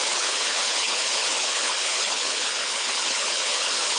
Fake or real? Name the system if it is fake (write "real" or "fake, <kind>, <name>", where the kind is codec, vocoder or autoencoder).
fake, codec, HILCodec